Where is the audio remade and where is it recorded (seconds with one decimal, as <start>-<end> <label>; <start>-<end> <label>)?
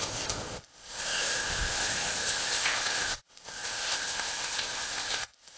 0.0-5.6 remade